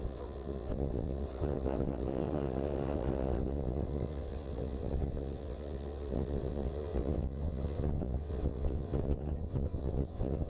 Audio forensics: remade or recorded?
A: remade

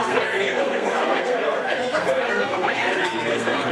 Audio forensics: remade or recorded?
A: remade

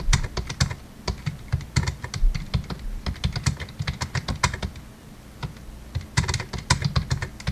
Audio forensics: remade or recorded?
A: recorded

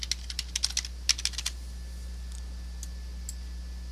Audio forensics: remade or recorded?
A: recorded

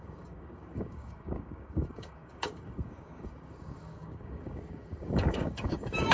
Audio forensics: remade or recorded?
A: remade